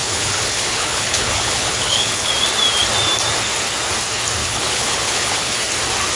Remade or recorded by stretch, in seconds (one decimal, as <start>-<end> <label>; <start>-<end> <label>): 0.0-2.3 remade; 2.3-4.4 recorded; 4.4-5.6 remade; 5.6-6.2 recorded